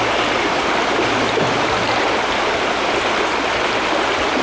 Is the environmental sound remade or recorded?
recorded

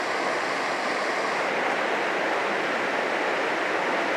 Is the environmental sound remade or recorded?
recorded